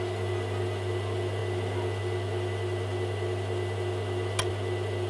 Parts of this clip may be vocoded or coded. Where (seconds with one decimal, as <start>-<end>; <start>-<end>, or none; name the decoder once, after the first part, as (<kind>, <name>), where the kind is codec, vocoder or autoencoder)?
none